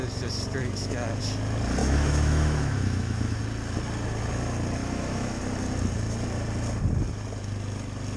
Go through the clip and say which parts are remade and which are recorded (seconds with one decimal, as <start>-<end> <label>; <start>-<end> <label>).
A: 0.0-0.6 recorded; 0.6-1.2 remade; 1.2-1.8 recorded; 1.8-3.4 remade; 3.4-4.8 recorded; 4.8-5.4 remade; 5.4-8.2 recorded